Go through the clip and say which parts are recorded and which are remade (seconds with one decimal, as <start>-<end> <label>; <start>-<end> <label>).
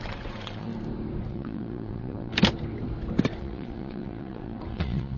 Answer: 0.0-0.7 remade; 0.7-1.3 recorded; 1.3-2.3 remade; 2.3-3.4 recorded; 3.4-5.2 remade